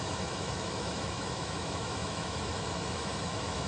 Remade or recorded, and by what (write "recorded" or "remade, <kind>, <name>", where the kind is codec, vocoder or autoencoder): remade, autoencoder, DAC-VAE